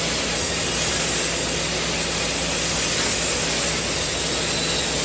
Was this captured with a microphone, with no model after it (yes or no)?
yes